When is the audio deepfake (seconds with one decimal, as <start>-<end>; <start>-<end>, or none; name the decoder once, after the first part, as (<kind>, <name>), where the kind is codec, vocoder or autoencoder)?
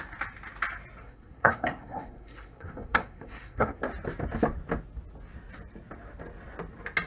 1.0-3.8 (codec, SNAC)